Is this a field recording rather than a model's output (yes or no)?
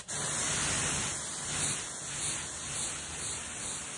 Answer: yes